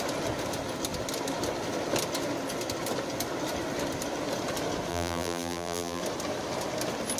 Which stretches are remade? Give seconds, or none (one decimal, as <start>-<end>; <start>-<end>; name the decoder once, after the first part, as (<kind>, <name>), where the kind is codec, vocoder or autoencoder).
4.9-6.0 (vocoder, BigVGAN v2)